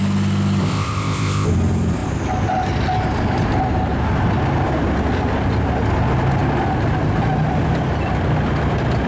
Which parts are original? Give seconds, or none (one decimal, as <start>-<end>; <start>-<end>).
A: 0.0-0.6; 1.5-9.1